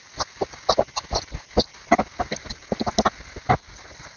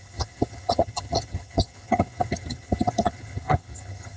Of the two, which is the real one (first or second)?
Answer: first